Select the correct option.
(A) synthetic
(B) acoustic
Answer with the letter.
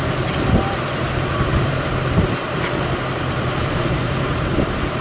A